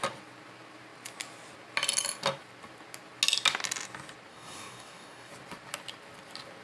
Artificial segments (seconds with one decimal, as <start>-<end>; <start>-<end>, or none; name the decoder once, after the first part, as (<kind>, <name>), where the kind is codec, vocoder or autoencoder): 4.3-5.3 (codec, DAC)